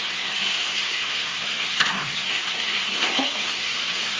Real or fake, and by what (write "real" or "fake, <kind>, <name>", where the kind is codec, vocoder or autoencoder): fake, codec, SNAC